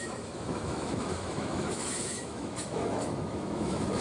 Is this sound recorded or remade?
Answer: remade